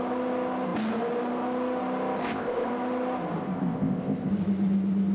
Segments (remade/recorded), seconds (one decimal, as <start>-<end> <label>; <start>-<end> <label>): 0.0-2.2 recorded; 2.2-2.7 remade; 2.7-3.4 recorded; 3.4-4.3 remade; 4.3-5.1 recorded